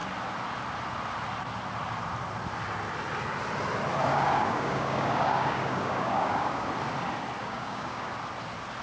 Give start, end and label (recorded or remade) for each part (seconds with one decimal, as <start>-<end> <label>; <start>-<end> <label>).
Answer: 0.0-4.1 recorded; 4.1-6.7 remade; 6.7-7.4 recorded; 7.4-8.1 remade; 8.1-8.8 recorded